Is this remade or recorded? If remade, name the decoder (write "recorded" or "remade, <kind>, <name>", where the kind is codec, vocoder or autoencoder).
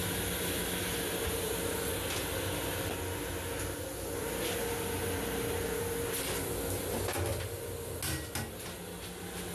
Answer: recorded